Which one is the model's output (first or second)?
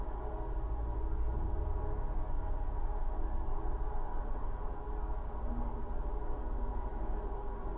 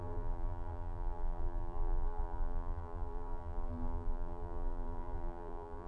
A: second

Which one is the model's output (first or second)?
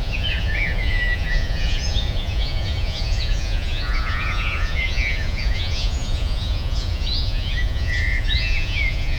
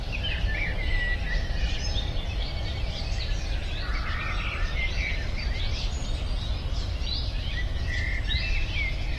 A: first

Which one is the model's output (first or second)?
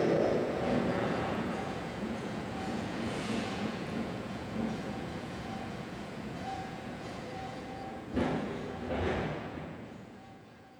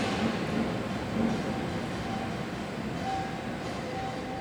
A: first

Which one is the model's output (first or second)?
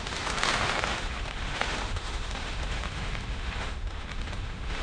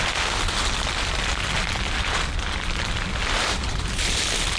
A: first